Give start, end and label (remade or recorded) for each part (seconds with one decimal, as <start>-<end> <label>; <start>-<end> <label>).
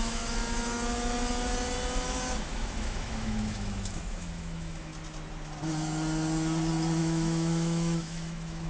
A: 0.0-0.4 remade; 0.4-2.4 recorded; 2.4-4.9 remade; 4.9-7.0 recorded; 7.0-8.7 remade